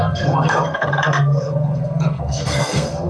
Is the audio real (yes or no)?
no